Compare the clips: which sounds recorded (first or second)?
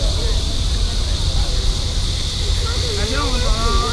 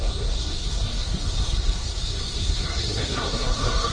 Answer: first